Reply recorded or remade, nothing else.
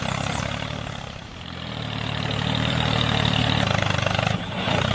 remade